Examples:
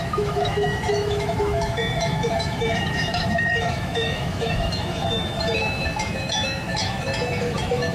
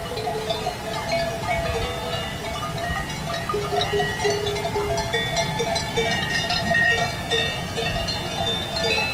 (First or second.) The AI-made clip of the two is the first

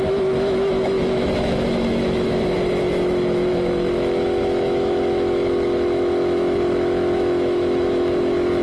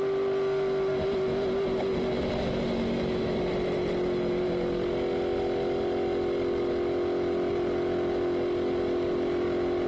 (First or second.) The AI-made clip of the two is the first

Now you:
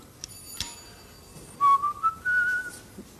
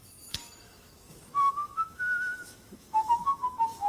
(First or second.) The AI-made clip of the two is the second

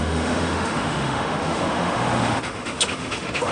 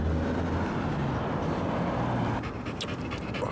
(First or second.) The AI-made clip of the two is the first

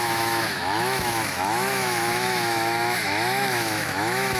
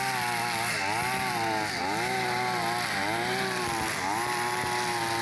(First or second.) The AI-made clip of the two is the first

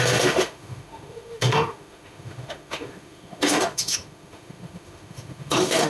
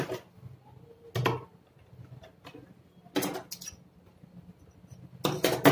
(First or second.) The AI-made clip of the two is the first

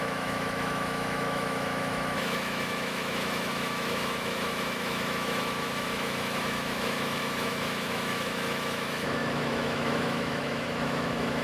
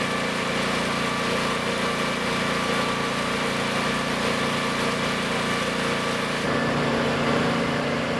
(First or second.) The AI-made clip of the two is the first